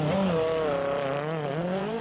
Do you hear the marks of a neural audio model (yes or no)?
no